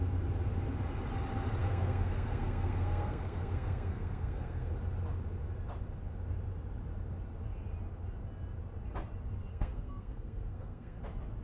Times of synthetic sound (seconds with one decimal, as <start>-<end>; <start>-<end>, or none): 1.6-4.7; 9.5-11.0